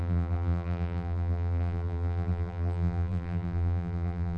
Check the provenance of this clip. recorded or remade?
remade